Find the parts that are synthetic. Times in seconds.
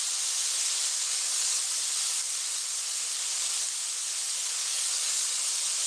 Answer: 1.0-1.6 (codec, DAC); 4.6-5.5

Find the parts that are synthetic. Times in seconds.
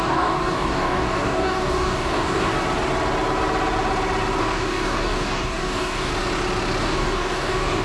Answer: 0.0-2.5 (codec, DAC); 4.4-6.1; 6.8-7.8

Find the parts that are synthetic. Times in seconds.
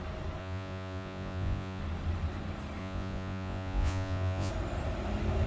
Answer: 0.4-1.8 (vocoder, Vocos); 2.8-4.5